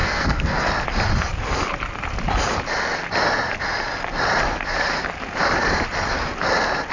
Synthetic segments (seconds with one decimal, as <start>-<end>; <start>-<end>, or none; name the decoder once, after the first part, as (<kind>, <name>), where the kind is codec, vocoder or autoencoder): 0.0-0.7 (codec, SNAC)